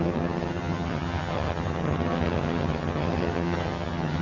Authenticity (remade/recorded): remade